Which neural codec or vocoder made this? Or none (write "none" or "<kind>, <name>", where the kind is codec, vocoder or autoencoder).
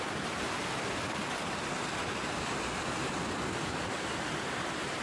none